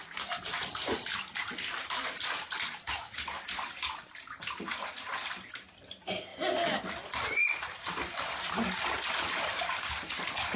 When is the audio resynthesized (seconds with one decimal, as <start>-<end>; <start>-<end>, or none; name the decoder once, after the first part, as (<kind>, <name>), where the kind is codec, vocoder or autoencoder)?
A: none